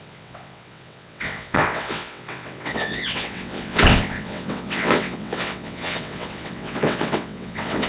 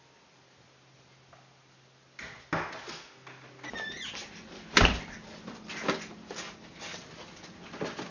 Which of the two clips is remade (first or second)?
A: first